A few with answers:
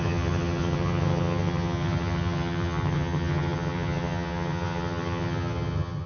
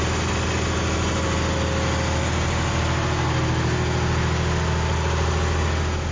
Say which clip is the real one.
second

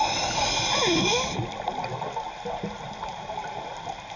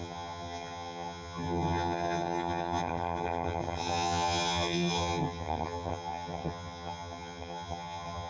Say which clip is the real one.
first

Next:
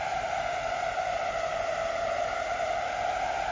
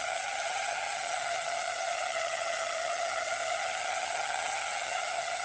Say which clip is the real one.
first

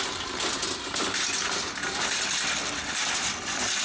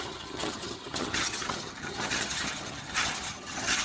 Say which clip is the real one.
first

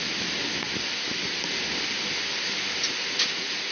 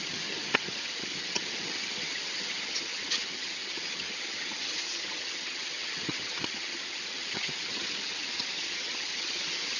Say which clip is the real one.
first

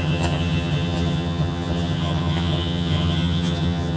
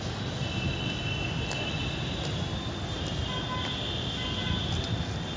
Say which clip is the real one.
second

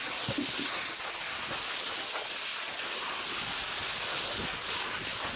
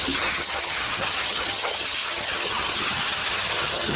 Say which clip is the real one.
first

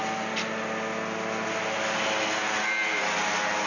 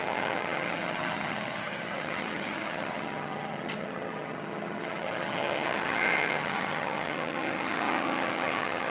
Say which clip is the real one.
first